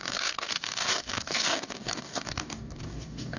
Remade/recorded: remade